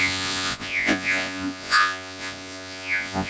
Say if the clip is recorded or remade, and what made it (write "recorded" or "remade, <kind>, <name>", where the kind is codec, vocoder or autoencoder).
remade, vocoder, Vocos